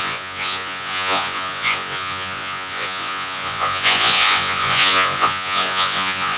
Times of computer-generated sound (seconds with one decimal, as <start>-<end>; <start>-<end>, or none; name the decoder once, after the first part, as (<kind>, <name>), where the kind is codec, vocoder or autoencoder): 0.0-6.4 (vocoder, Vocos)